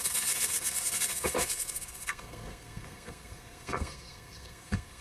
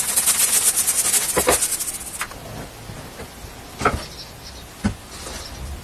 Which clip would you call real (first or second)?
second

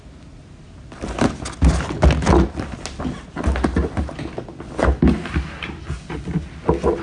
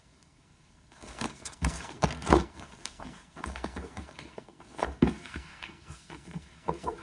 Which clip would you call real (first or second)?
first